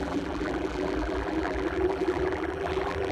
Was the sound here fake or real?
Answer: fake